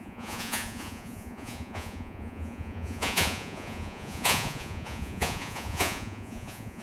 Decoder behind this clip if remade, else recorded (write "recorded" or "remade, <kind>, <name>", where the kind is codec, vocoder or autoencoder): remade, vocoder, Vocos